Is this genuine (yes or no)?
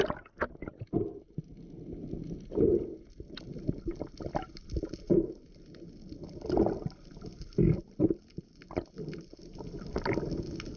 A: yes